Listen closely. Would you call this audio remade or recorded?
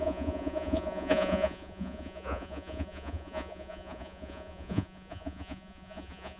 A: remade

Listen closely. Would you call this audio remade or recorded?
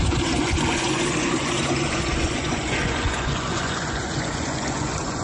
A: remade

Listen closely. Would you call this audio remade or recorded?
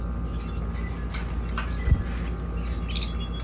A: recorded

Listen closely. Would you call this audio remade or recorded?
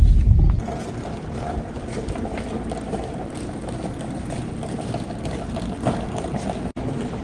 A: recorded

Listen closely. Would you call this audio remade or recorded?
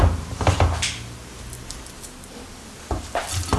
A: recorded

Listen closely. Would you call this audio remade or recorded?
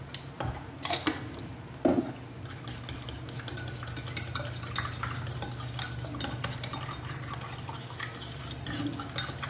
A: recorded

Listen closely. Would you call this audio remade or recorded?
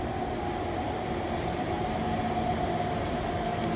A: recorded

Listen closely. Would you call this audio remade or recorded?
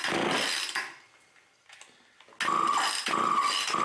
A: recorded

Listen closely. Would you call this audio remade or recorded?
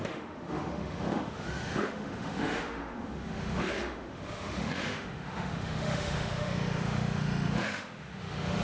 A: remade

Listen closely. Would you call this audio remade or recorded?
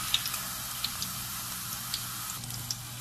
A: recorded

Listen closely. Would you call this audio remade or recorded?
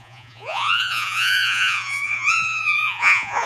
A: remade